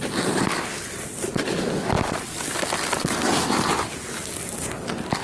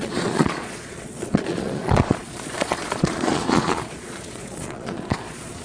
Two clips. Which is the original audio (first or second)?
first